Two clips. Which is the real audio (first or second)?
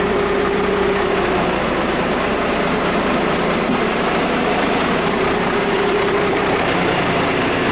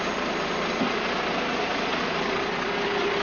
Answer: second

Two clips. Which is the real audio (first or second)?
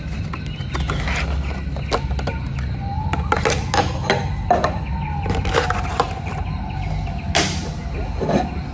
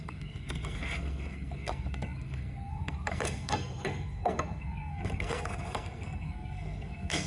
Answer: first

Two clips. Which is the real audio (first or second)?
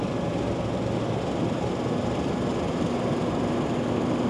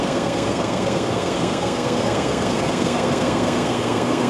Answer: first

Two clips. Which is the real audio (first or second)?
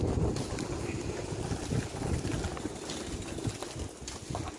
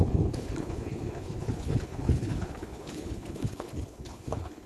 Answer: first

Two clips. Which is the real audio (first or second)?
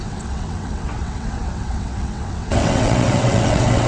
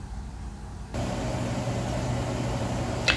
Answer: second